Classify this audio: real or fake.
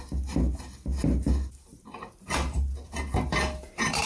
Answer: fake